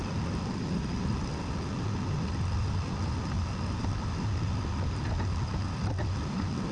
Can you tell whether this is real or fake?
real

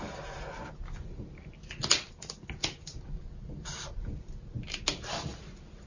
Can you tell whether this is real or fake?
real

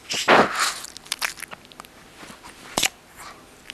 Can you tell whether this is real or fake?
real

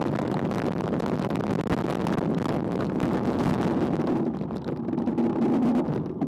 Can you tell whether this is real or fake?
real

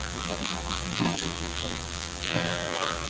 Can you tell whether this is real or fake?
fake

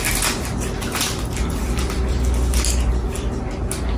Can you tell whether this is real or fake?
real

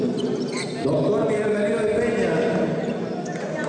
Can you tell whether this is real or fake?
real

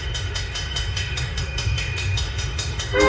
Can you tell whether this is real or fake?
fake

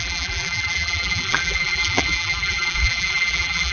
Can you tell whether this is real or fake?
fake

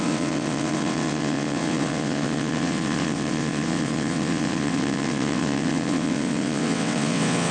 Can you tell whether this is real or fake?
fake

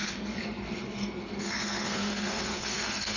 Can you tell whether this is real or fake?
fake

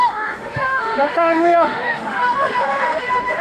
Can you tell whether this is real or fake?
fake